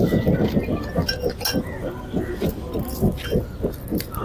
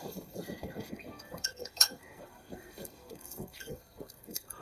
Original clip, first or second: first